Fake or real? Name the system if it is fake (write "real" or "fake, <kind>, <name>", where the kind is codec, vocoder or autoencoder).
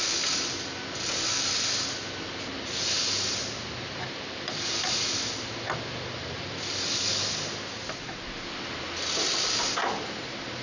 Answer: real